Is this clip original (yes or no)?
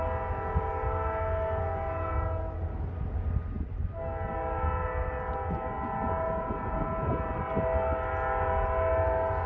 yes